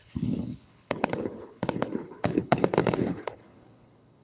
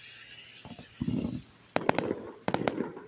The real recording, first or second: second